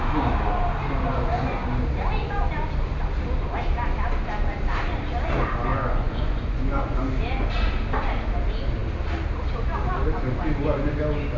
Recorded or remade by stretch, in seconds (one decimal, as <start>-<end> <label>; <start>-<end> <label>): 0.0-5.7 recorded; 5.7-7.0 remade; 7.0-11.4 recorded